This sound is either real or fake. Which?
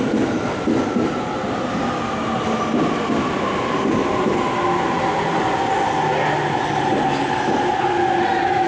real